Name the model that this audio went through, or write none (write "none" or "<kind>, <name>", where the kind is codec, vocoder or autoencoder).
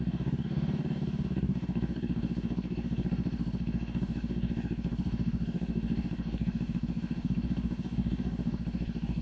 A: codec, DAC